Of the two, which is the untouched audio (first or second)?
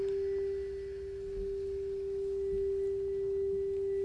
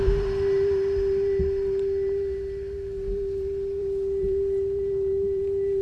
first